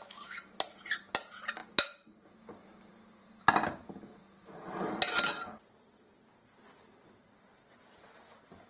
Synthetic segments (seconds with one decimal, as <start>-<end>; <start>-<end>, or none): 4.4-5.0